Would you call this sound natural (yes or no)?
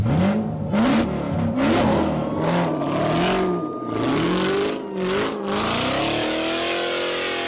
yes